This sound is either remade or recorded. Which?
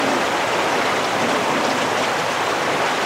recorded